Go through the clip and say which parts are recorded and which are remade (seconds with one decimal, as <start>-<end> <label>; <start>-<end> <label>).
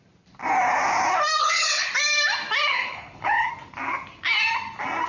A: 0.0-1.4 recorded; 1.4-1.9 remade; 1.9-2.7 recorded; 2.7-3.5 remade; 3.5-5.1 recorded